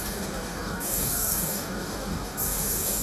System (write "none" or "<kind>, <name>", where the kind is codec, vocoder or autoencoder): codec, DAC